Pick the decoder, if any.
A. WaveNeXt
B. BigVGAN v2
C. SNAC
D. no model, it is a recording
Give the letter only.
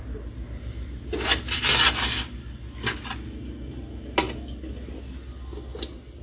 D